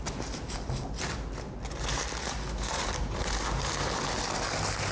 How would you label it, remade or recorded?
recorded